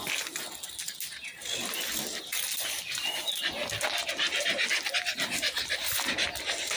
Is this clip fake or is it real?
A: real